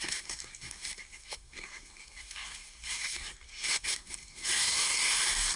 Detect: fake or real fake